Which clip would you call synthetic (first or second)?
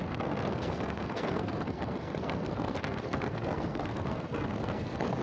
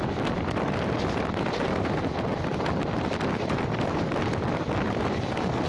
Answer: first